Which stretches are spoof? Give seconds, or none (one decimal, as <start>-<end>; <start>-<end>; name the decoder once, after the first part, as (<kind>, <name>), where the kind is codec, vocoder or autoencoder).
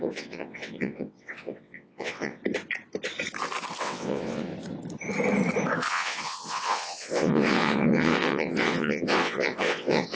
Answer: 0.0-2.4 (vocoder, WaveNeXt); 3.8-4.5; 5.9-10.2